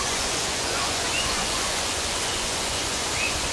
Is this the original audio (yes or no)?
no